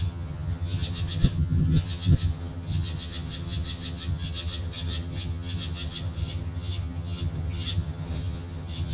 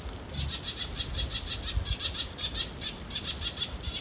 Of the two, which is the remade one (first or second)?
first